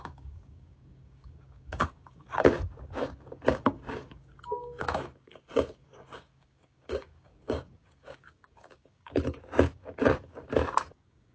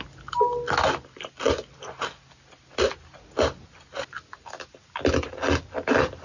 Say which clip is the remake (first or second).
first